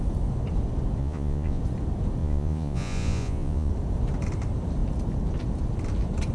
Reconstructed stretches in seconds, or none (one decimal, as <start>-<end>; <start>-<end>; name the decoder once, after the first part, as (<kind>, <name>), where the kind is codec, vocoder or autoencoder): 1.0-1.6 (vocoder, Vocos); 2.2-3.7